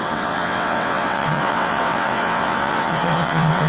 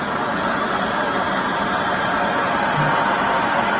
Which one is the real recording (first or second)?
second